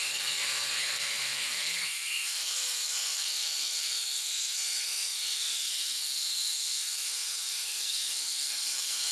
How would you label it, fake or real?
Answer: fake